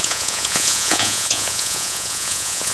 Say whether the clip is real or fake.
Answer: fake